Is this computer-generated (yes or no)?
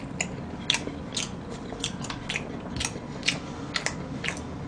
no